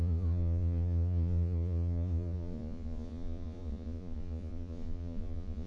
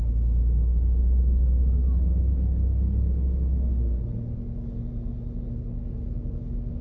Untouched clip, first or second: second